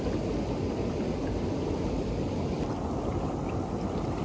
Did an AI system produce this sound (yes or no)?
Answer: no